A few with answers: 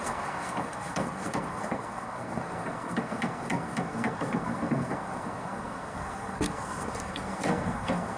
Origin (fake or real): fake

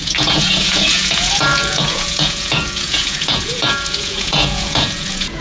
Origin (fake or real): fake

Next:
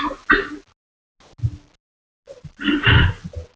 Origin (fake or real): real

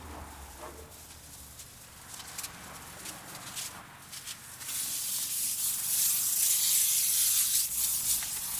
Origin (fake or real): real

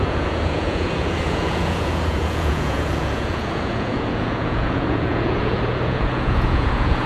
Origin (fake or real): fake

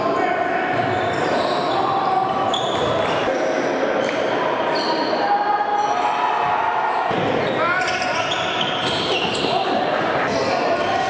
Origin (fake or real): real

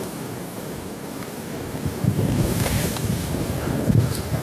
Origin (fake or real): fake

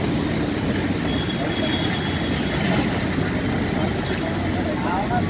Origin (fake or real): real